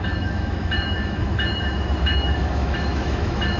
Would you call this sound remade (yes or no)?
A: yes